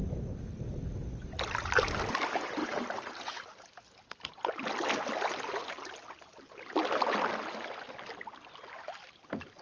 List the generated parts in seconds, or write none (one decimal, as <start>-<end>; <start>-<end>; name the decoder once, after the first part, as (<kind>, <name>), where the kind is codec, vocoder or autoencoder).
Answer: none